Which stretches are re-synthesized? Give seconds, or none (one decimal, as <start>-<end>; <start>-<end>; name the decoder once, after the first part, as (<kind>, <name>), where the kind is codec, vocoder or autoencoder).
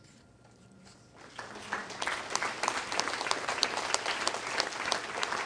none